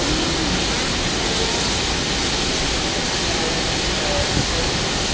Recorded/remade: recorded